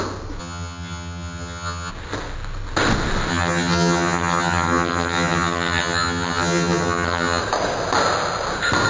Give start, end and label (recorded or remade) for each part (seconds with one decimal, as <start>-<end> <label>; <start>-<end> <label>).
0.0-0.4 recorded; 0.4-1.9 remade; 1.9-3.3 recorded; 3.3-7.4 remade; 7.4-8.9 recorded